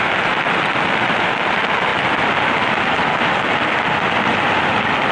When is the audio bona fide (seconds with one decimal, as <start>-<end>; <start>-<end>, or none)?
0.0-5.1